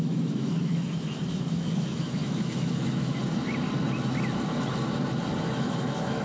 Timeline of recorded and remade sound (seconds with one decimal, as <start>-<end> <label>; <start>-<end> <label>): 0.0-3.2 remade; 3.2-5.3 recorded; 5.3-6.2 remade